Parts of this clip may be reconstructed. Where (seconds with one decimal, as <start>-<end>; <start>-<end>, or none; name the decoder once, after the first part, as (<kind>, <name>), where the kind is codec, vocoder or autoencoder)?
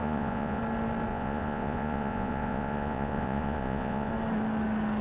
0.0-0.6 (vocoder, Vocos); 1.1-4.1